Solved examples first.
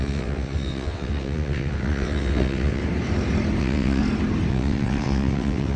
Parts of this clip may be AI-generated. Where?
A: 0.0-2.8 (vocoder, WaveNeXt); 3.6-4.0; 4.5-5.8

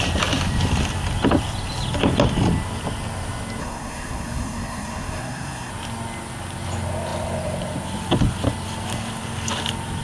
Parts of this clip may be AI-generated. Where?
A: 3.6-5.7 (codec, SNAC)